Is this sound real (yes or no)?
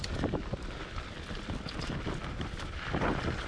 yes